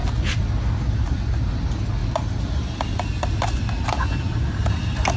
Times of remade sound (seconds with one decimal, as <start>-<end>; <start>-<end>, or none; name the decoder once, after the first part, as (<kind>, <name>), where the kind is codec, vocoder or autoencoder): none